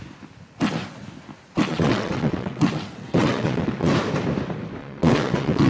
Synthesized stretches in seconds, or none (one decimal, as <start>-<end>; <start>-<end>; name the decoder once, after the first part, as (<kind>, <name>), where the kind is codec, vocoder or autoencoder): 1.7-3.9 (vocoder, WaveNeXt); 4.8-5.7

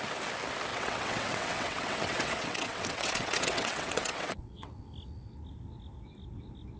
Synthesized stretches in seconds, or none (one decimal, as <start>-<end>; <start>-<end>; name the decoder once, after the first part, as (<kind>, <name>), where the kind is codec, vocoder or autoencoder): 0.7-4.8 (vocoder, WaveNeXt)

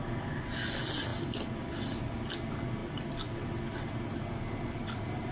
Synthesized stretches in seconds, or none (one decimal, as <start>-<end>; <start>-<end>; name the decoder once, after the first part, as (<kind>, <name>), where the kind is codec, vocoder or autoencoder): none